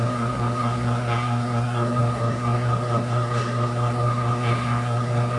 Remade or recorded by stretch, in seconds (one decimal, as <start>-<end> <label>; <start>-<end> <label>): 0.0-5.4 remade